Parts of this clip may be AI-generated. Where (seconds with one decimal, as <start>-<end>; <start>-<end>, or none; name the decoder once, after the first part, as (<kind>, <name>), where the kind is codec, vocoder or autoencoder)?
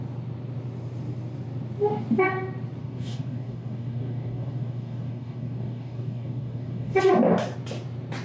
2.8-7.0 (codec, DAC)